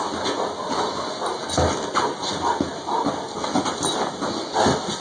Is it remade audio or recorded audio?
recorded